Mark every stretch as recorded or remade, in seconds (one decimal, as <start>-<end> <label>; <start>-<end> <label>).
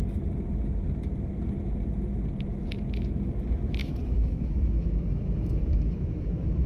0.0-3.8 recorded; 3.8-6.7 remade